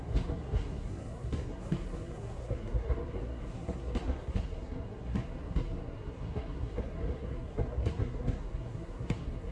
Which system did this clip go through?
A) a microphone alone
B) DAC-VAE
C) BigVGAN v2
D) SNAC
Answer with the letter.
D